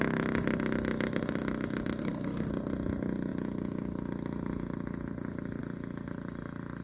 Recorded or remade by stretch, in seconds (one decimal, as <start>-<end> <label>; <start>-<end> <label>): 0.0-2.0 recorded; 2.0-2.5 remade; 2.5-6.8 recorded